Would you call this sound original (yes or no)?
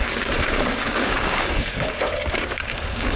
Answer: no